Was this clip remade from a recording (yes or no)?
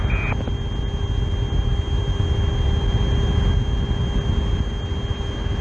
no